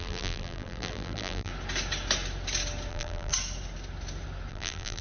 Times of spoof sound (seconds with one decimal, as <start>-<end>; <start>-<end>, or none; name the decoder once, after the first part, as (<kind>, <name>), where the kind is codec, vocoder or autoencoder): 0.0-1.5 (vocoder, BigVGAN v2); 2.9-3.3; 4.5-5.0